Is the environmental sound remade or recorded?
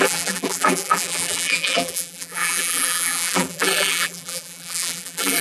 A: remade